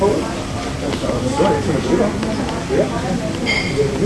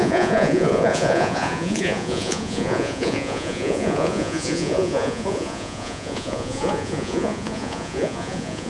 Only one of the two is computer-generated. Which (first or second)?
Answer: second